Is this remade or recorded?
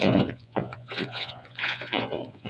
remade